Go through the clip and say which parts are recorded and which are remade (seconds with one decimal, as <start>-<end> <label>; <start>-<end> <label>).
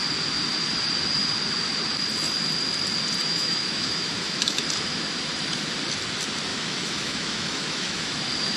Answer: 0.0-3.3 recorded; 3.3-4.6 remade; 4.6-6.5 recorded; 6.5-8.2 remade; 8.2-8.6 recorded